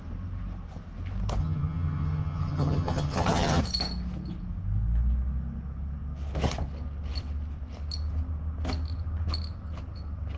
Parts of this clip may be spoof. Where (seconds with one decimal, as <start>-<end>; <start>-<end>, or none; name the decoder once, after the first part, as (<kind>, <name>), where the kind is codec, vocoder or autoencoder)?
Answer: 1.4-3.6 (vocoder, HiFi-GAN)